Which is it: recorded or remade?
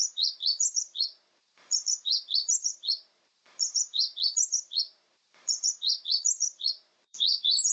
remade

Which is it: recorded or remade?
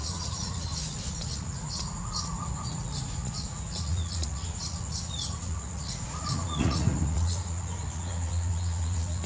remade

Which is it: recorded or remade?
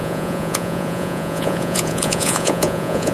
remade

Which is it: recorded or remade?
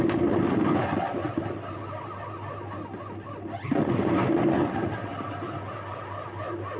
recorded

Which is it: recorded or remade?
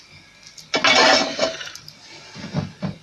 recorded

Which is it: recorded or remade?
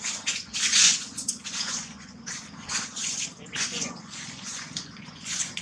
remade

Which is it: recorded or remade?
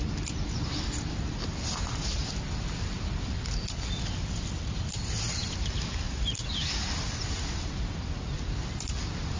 recorded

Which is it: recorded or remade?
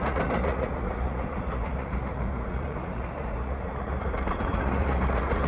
remade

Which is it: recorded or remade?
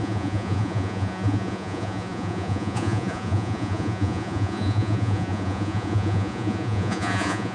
remade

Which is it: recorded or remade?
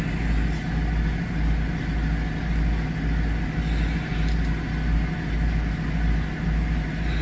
recorded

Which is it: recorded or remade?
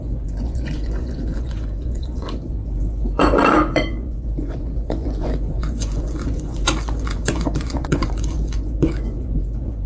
remade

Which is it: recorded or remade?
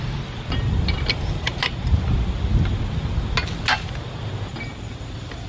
recorded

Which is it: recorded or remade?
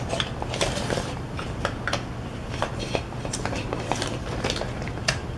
recorded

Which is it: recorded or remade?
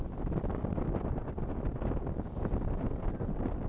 recorded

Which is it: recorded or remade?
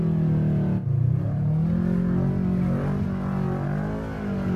recorded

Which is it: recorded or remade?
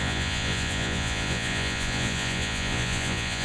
remade